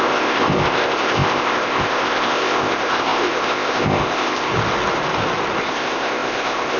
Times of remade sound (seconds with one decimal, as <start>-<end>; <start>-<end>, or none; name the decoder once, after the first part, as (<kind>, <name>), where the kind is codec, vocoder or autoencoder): 0.0-4.5 (codec, ZipCodec); 5.6-6.8